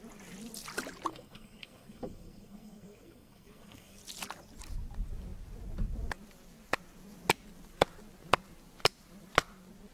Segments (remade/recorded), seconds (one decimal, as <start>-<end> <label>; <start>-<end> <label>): 0.0-1.1 recorded; 1.1-4.0 remade; 4.0-9.9 recorded